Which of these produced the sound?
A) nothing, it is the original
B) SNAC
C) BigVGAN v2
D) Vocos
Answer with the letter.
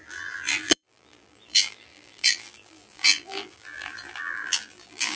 C